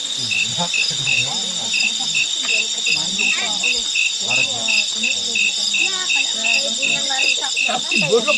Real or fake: real